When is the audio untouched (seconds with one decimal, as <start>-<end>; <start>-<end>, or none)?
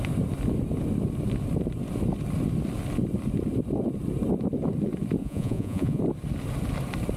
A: 0.0-5.2; 6.0-7.2